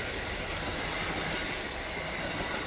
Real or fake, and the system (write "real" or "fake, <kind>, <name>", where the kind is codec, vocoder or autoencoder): real